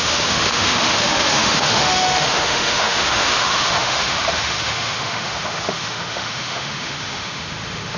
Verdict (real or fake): fake